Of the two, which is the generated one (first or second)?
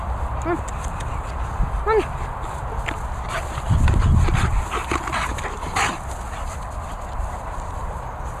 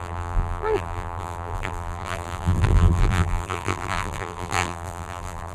second